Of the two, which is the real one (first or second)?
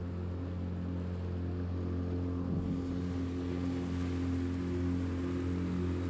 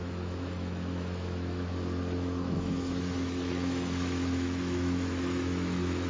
first